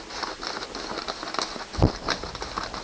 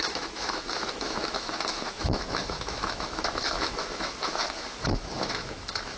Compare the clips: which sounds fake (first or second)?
second